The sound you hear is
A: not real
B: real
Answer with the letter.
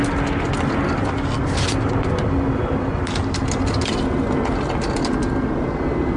B